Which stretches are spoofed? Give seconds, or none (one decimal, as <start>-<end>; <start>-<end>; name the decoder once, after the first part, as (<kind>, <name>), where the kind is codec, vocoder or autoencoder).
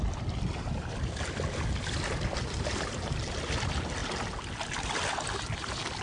none